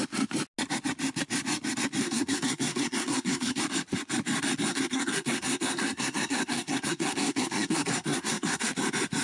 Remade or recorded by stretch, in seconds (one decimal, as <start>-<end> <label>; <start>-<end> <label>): 0.0-2.0 recorded; 2.0-3.6 remade; 3.6-4.7 recorded; 4.7-8.7 remade; 8.7-9.2 recorded